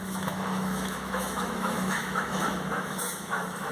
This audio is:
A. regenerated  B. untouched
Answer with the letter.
A